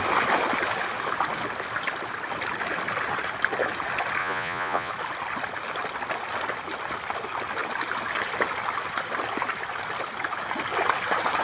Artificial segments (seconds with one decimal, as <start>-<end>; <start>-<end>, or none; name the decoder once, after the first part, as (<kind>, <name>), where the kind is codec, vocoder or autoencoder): 4.2-4.9 (vocoder, Vocos)